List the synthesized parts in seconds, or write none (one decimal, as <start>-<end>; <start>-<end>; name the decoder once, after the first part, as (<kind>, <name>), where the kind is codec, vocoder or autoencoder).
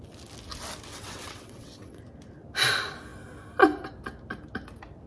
0.9-2.0 (vocoder, WaveNeXt)